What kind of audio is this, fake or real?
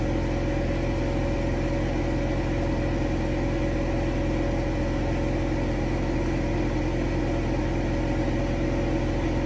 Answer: real